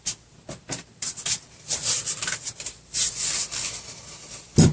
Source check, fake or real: real